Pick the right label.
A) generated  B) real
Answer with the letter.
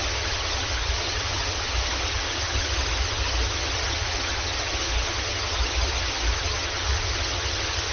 A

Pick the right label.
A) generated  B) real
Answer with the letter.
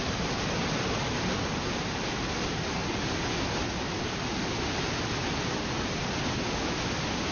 B